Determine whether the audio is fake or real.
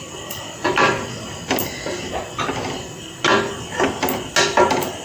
real